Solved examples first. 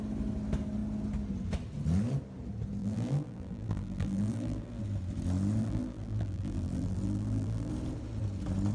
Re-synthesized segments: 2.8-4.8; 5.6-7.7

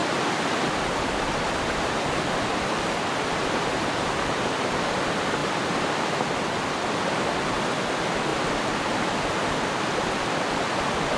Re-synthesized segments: 0.0-0.7; 8.3-9.0

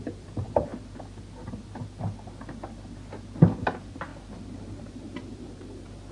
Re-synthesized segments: 0.0-0.7; 3.5-4.1; 4.8-6.1

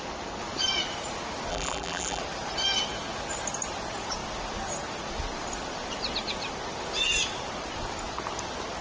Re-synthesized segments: 1.5-2.2

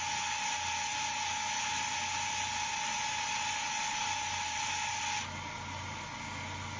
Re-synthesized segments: 0.9-5.0

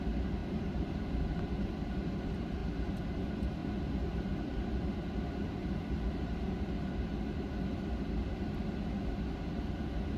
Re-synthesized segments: 0.4-1.0; 3.6-6.5

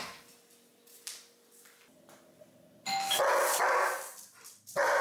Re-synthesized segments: none

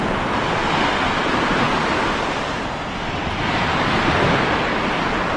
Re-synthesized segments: none